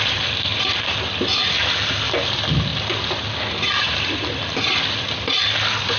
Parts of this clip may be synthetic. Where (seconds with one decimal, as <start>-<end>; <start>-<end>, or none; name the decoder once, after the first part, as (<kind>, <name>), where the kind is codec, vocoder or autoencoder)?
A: 0.5-1.0 (vocoder, BigVGAN v2); 1.4-2.1; 2.7-4.8